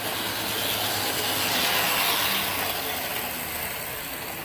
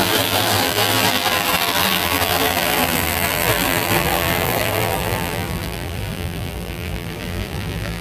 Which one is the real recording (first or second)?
first